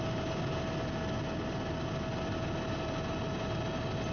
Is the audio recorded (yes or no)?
yes